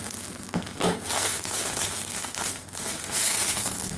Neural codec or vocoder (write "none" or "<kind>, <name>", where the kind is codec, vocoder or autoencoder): codec, SNAC